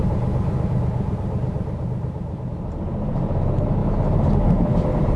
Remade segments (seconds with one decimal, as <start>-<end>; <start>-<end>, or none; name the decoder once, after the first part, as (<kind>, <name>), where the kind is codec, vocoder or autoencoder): none